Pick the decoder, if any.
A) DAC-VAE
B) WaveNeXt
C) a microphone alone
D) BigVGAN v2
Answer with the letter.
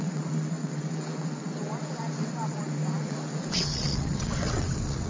B